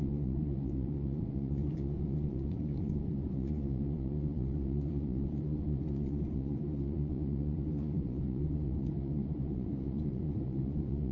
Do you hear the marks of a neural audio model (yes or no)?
yes